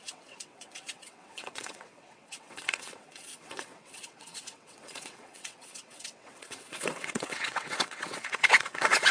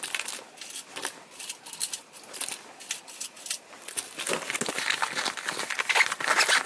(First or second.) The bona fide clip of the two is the second